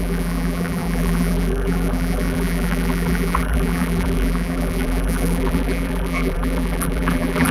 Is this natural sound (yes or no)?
no